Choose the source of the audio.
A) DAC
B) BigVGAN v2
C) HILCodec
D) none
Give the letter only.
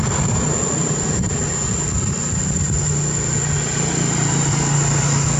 D